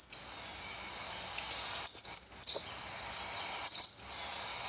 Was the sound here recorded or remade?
recorded